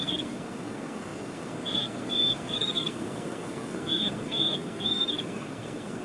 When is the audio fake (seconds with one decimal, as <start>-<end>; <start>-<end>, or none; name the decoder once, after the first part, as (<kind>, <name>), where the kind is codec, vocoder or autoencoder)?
0.0-6.0 (codec, SNAC)